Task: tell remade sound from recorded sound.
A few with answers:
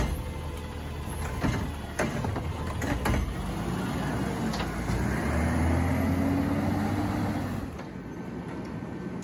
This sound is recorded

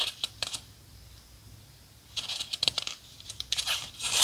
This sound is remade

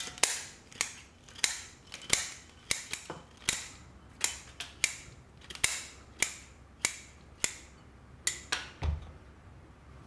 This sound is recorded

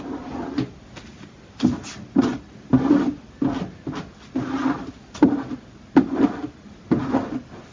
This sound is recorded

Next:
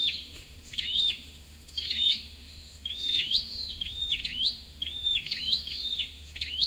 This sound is remade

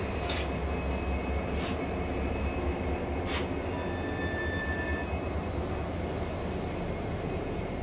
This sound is recorded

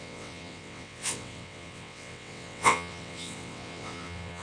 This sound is remade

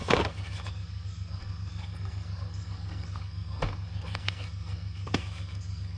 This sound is remade